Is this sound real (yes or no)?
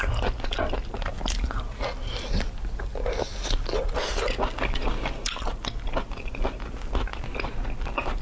yes